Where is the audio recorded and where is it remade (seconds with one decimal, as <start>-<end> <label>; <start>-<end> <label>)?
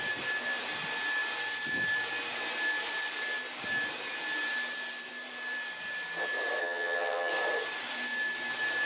0.0-6.6 recorded; 6.6-7.3 remade; 7.3-8.9 recorded